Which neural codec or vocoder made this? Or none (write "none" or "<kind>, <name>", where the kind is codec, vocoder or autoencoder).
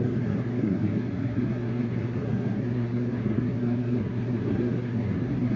codec, SNAC